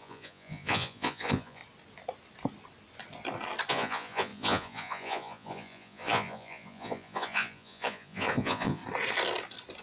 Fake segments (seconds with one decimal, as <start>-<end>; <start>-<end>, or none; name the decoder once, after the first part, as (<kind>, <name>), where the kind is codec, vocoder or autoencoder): 0.0-1.6 (vocoder, Vocos); 3.7-8.8